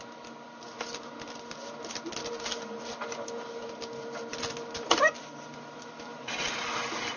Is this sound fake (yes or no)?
no